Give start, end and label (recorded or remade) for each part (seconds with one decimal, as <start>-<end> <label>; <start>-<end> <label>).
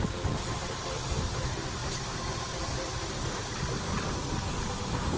0.0-5.2 recorded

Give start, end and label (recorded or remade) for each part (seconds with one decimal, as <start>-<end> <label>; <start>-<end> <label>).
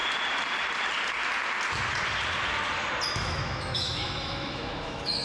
0.0-3.1 recorded; 3.1-5.2 remade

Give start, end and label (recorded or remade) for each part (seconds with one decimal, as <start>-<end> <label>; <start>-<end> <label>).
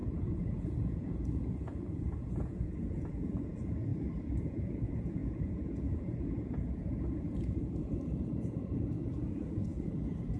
0.0-3.9 remade; 3.9-4.4 recorded; 4.4-10.4 remade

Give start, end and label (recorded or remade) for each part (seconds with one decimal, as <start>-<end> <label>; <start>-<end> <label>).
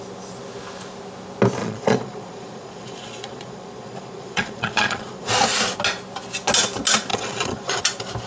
0.0-1.6 recorded; 1.6-5.3 remade; 5.3-7.1 recorded; 7.1-7.8 remade; 7.8-8.3 recorded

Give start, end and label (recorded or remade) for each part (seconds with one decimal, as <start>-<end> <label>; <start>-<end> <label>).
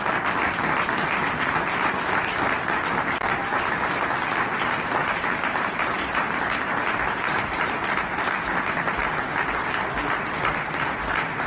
0.0-3.4 recorded; 3.4-4.2 remade; 4.2-5.0 recorded; 5.0-6.4 remade; 6.4-7.3 recorded; 7.3-8.2 remade; 8.2-11.5 recorded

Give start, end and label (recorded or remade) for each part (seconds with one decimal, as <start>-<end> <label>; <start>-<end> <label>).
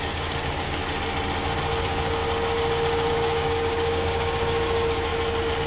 0.0-0.8 remade; 0.8-1.8 recorded; 1.8-2.2 remade; 2.2-3.1 recorded; 3.1-5.1 remade; 5.1-5.7 recorded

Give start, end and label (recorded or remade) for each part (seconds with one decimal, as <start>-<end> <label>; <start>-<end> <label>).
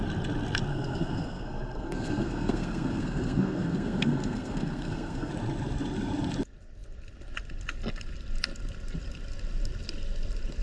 0.0-0.7 recorded; 0.7-5.3 remade; 5.3-10.6 recorded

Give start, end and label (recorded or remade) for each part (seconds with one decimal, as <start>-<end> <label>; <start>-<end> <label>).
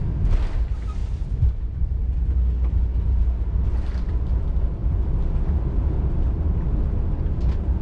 0.0-7.8 recorded